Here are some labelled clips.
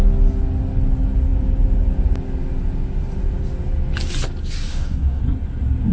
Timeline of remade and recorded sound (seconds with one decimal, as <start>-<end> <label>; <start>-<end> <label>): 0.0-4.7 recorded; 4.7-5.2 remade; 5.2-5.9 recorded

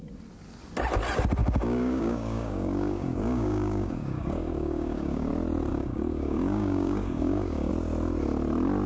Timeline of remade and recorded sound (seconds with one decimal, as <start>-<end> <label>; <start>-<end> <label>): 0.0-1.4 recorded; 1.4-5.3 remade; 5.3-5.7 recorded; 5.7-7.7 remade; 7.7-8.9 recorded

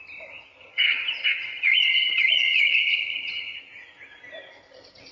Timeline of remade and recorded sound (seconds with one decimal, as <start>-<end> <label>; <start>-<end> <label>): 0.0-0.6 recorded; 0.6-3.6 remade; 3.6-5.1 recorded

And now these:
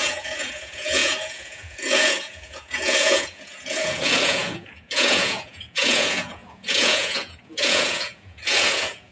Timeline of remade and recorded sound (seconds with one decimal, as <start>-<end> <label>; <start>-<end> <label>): 0.0-9.1 remade

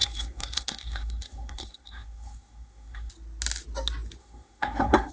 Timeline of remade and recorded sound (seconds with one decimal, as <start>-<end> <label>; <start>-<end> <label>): 0.0-3.1 remade; 3.1-4.2 recorded; 4.2-5.1 remade

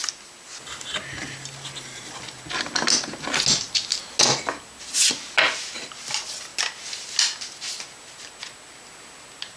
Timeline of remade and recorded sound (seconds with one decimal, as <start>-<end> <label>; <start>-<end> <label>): 0.0-9.6 recorded

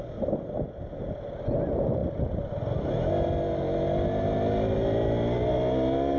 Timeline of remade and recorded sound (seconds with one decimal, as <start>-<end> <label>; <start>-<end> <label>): 0.0-6.2 recorded

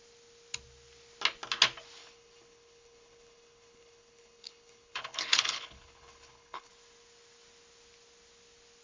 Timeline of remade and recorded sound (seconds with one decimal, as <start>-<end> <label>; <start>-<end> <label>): 0.0-2.0 recorded; 2.0-6.7 remade; 6.7-8.8 recorded